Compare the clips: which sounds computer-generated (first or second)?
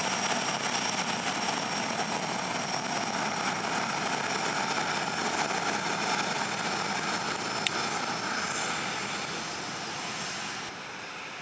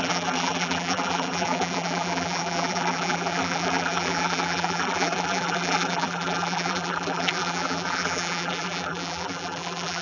second